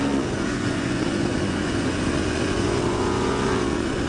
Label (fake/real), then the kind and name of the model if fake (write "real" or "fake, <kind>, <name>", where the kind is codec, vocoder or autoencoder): fake, vocoder, Vocos